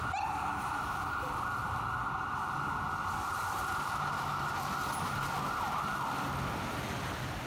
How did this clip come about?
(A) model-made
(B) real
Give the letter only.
B